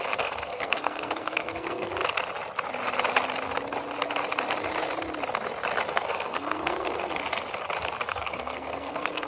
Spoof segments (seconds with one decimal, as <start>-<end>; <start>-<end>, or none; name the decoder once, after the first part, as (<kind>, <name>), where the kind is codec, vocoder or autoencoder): 0.0-1.9 (codec, SNAC); 5.9-7.2; 8.1-9.3